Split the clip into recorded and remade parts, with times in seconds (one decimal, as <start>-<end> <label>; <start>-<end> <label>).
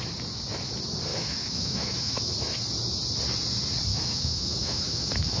0.0-1.1 recorded; 1.1-2.3 remade; 2.3-3.9 recorded; 3.9-5.4 remade